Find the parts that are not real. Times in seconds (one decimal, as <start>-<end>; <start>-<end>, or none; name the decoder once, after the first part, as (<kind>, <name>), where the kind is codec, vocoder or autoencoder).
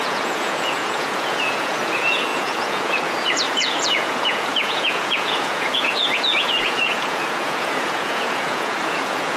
0.0-9.4 (vocoder, Vocos)